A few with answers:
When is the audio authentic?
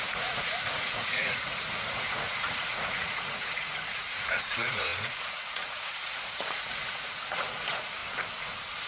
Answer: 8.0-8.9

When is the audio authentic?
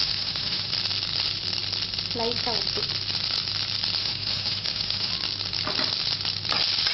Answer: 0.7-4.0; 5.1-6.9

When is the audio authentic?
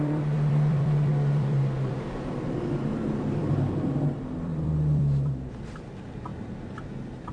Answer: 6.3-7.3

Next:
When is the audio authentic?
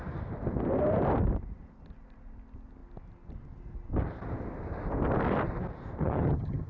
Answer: 0.0-6.0